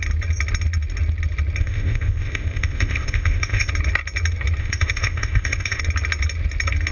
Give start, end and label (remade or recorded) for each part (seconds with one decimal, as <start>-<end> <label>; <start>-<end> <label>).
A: 0.0-1.6 recorded; 1.6-3.7 remade; 3.7-4.6 recorded; 4.6-5.8 remade; 5.8-6.9 recorded